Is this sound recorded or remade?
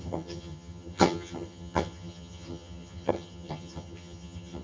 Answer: remade